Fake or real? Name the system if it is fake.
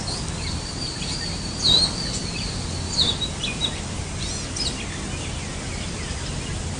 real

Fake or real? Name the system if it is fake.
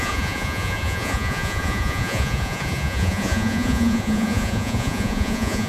fake, vocoder, Vocos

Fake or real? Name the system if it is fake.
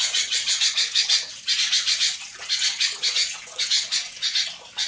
fake, vocoder, Vocos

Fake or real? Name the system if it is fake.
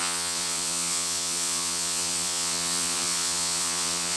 fake, vocoder, Vocos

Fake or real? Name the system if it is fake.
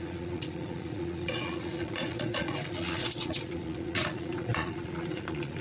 fake, vocoder, Vocos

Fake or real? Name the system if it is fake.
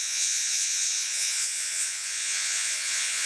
fake, vocoder, Vocos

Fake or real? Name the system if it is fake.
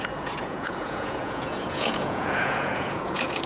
fake, vocoder, Vocos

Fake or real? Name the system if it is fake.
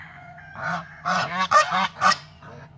fake, vocoder, Vocos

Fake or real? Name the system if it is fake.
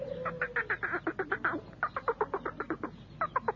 real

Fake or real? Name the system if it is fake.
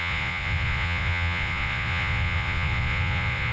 fake, vocoder, Vocos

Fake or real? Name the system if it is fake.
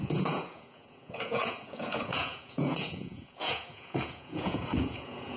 fake, vocoder, Vocos